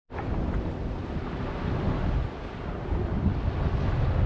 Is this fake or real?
real